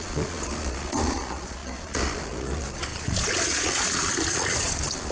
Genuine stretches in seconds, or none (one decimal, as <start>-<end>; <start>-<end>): none

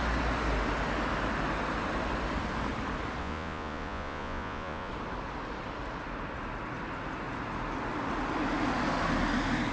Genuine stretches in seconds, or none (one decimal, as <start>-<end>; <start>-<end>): 0.0-3.2; 4.9-9.7

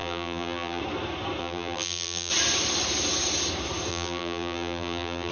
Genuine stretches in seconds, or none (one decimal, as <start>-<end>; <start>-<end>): 0.8-1.4; 2.3-3.9

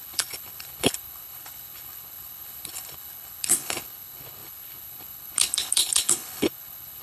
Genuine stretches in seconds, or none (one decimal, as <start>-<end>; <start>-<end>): none

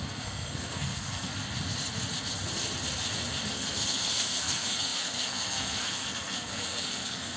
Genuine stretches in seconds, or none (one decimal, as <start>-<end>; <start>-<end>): 1.3-3.5